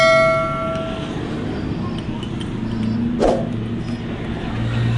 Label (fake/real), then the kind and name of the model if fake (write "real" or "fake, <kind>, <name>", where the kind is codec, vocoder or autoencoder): real